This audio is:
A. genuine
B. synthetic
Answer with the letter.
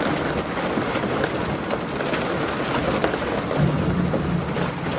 A